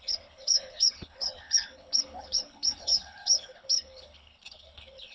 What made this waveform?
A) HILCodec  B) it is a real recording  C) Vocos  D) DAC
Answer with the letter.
A